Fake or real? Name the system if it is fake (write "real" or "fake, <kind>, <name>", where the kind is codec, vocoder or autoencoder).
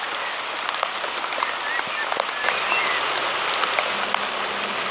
real